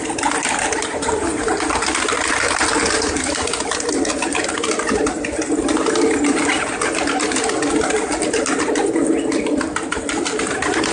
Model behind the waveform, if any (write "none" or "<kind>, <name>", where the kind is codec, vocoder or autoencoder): none